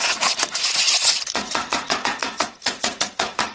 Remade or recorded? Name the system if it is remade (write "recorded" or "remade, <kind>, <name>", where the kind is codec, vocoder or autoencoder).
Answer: remade, vocoder, Vocos